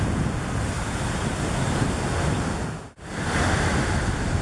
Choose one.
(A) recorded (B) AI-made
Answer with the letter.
A